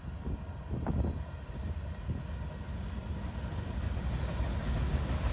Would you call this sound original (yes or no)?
yes